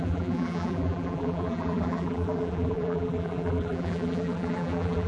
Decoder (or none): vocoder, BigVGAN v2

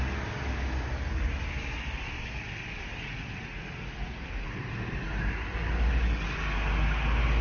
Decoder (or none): none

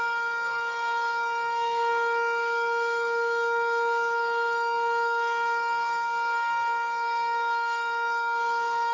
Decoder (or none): codec, DAC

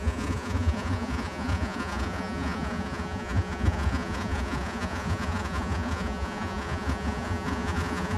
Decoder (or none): vocoder, Vocos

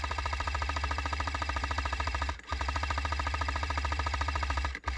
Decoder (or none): vocoder, BigVGAN v2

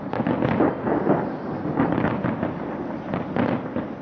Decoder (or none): none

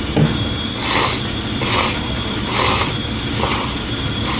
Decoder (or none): none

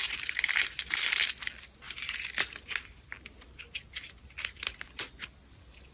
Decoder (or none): none